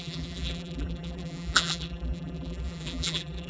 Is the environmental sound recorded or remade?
remade